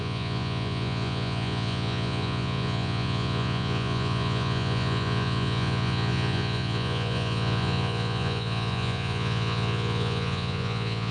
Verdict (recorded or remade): remade